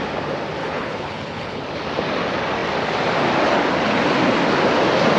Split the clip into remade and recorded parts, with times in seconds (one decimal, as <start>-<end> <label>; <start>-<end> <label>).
0.0-0.6 recorded; 0.6-1.6 remade; 1.6-5.2 recorded